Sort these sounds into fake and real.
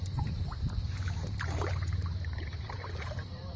fake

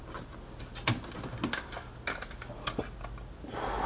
real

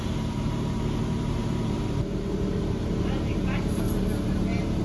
fake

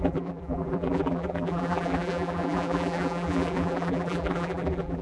fake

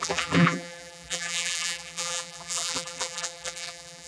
fake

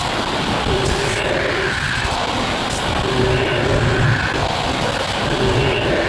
real